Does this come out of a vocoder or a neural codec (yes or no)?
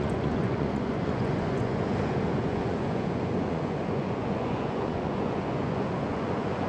yes